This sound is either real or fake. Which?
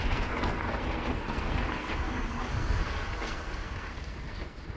fake